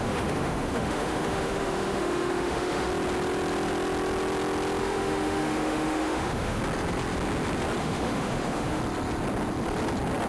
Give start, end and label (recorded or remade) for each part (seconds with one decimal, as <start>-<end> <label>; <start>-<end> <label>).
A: 0.0-2.9 remade; 2.9-4.8 recorded; 4.8-6.6 remade; 6.6-7.8 recorded; 7.8-8.8 remade; 8.8-10.3 recorded